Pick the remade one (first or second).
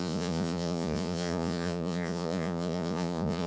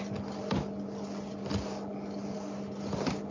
first